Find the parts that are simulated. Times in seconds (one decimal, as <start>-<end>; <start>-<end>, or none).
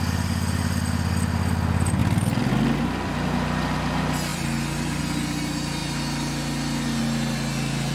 2.0-2.5